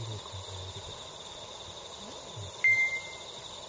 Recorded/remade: recorded